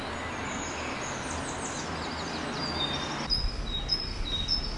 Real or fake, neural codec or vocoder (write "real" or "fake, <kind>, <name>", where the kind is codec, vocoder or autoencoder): real